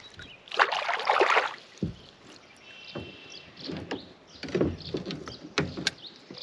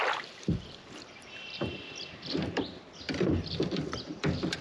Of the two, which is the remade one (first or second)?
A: second